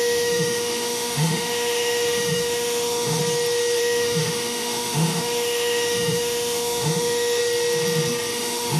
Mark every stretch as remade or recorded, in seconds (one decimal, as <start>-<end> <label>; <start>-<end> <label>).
0.0-3.2 remade; 3.2-3.8 recorded; 3.8-7.4 remade; 7.4-8.3 recorded; 8.3-8.8 remade